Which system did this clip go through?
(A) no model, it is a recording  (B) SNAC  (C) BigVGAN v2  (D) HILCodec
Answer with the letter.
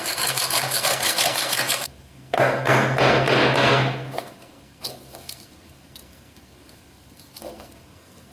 B